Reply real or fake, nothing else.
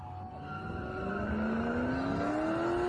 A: real